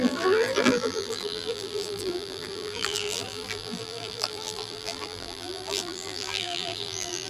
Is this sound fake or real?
fake